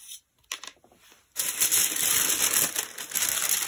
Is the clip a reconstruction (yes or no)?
no